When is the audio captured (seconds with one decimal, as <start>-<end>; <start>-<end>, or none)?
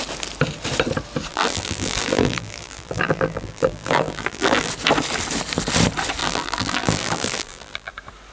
0.0-1.3; 4.7-6.2; 7.9-8.3